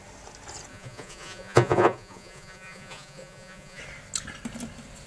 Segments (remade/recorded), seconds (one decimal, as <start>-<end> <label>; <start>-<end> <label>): 0.0-0.7 recorded; 0.7-3.8 remade; 3.8-5.1 recorded